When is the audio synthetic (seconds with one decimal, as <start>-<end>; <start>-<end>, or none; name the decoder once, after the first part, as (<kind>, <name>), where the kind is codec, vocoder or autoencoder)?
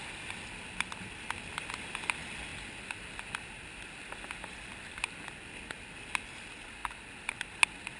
none